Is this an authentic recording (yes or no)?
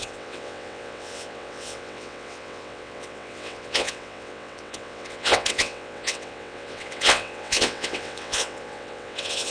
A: no